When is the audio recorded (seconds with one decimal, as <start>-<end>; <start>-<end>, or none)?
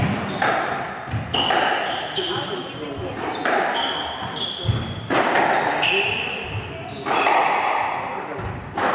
0.0-8.9